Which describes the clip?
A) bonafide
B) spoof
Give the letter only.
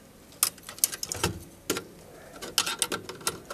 A